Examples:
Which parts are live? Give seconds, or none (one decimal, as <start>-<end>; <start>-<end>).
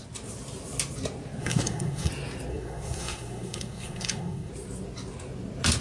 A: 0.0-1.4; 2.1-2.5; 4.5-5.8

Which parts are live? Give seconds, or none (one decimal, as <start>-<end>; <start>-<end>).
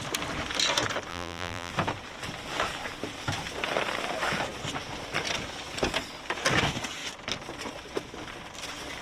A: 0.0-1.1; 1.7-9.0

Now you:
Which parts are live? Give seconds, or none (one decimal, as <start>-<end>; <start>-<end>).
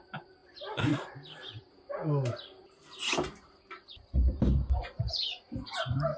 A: 0.0-6.2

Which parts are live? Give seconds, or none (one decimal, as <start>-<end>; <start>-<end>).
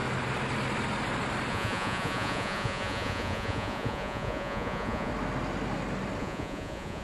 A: 0.0-1.5; 5.1-6.2